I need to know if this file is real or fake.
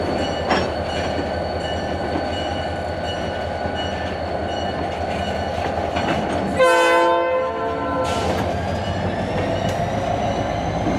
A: real